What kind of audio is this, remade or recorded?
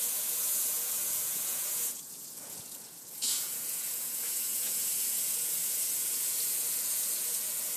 remade